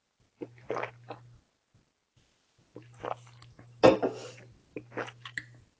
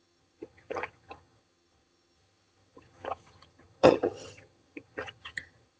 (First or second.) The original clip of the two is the first